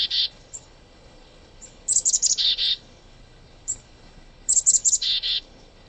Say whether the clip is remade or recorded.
remade